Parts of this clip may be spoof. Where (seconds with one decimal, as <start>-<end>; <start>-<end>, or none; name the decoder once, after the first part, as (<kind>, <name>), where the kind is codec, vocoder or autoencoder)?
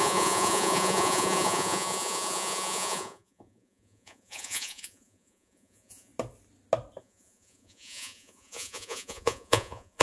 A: 0.0-6.1 (vocoder, Vocos); 7.0-10.0